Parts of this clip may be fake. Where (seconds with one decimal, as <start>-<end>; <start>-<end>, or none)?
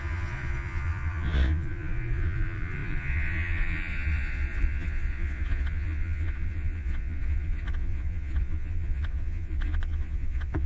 0.0-10.7